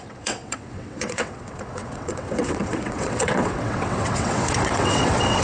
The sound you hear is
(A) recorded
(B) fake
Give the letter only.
B